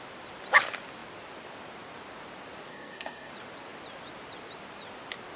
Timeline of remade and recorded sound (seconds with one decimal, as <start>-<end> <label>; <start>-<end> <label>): 0.0-2.7 recorded; 2.7-3.3 remade; 3.3-5.4 recorded